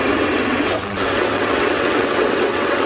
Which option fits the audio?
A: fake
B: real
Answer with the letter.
A